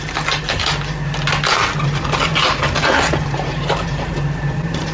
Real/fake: real